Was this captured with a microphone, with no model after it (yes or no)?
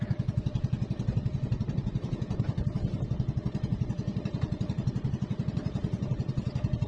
no